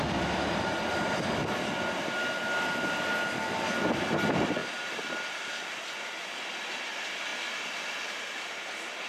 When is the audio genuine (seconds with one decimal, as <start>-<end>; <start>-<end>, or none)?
0.0-9.1